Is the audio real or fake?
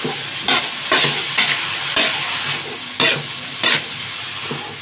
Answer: real